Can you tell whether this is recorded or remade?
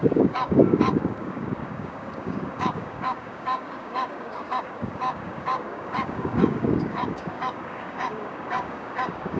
remade